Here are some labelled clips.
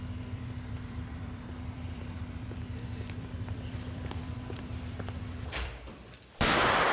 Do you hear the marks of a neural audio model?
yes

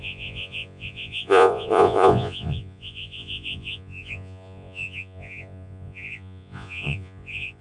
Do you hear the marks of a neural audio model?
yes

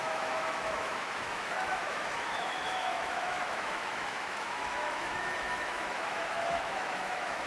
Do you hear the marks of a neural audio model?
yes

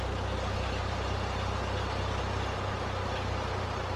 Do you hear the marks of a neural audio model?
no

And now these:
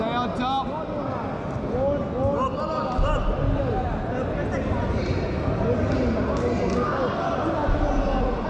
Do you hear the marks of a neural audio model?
no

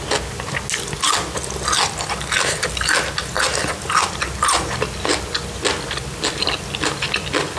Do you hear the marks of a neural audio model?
no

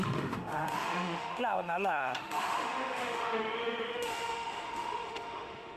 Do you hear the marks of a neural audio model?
yes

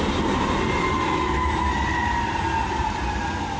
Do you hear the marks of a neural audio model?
no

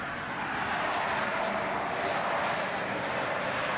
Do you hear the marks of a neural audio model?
no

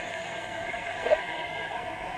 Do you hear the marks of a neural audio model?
yes